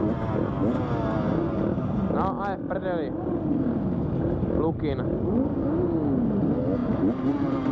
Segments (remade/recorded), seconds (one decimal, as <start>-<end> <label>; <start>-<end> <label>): 0.0-6.8 recorded; 6.8-7.7 remade